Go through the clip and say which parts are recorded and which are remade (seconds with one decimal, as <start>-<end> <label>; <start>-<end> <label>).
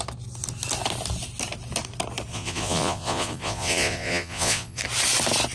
0.0-2.3 recorded; 2.3-4.8 remade; 4.8-5.5 recorded